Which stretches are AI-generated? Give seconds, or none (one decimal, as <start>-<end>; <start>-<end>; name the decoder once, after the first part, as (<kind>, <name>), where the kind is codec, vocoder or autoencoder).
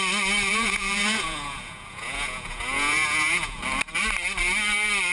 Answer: 0.5-3.6 (vocoder, Vocos)